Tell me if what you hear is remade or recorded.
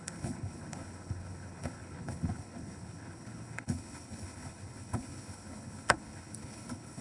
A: remade